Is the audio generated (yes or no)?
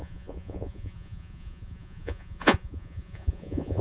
yes